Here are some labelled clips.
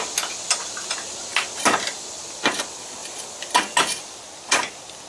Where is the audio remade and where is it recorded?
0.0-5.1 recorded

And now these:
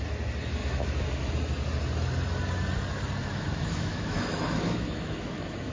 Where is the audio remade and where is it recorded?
0.0-0.6 recorded; 0.6-1.3 remade; 1.3-3.2 recorded; 3.2-5.7 remade

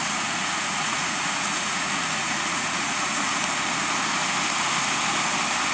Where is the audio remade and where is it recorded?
0.0-3.4 remade; 3.4-5.7 recorded